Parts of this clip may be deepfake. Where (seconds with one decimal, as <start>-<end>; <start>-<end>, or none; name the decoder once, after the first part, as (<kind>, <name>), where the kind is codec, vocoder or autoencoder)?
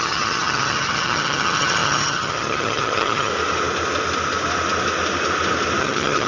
0.0-3.3 (vocoder, HiFi-GAN); 5.8-6.3